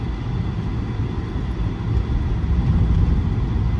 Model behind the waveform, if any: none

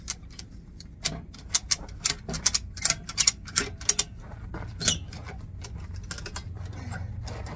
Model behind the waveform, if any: none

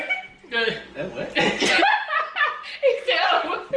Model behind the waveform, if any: none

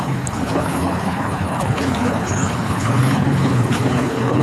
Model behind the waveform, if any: codec, HILCodec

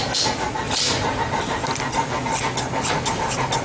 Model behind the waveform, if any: none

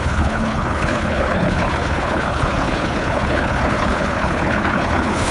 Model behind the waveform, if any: codec, HILCodec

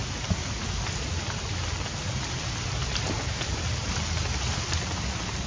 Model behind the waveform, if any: none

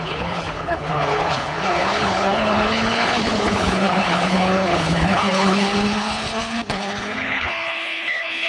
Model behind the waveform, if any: codec, HILCodec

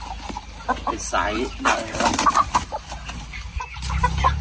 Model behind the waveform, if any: none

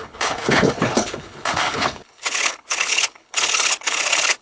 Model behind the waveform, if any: codec, HILCodec